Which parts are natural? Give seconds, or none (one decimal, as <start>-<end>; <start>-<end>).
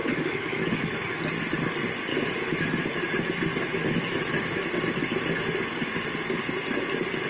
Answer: 1.0-2.1; 2.6-3.8; 4.5-7.3